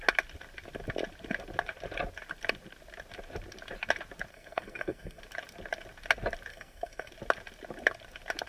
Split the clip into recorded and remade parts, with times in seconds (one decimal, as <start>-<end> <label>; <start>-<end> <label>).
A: 0.0-4.3 recorded; 4.3-5.2 remade; 5.2-6.5 recorded; 6.5-7.1 remade; 7.1-8.5 recorded